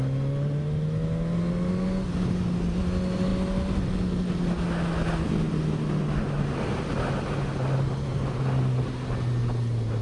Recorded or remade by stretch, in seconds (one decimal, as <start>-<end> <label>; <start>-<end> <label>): 0.0-10.0 recorded